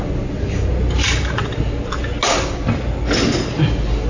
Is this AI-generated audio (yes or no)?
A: no